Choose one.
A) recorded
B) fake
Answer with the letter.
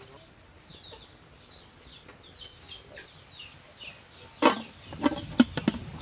A